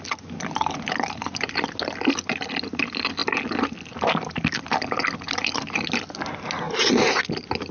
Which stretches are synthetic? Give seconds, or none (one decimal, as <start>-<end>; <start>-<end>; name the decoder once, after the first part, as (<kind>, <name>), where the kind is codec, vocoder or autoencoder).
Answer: none